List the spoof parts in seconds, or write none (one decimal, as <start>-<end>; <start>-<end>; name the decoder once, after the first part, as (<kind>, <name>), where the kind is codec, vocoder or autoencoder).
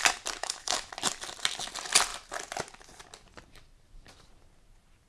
0.4-0.9 (autoencoder, DAC-VAE)